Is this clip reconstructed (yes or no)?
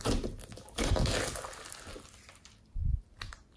no